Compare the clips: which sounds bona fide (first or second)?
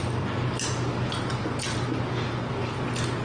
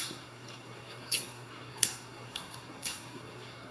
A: first